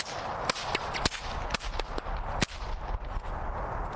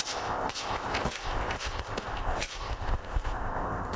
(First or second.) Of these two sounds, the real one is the first